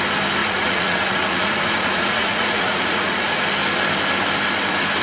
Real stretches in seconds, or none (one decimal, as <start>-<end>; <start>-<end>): 0.0-0.4; 3.4-5.0